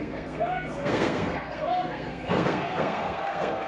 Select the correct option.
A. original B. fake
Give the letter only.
B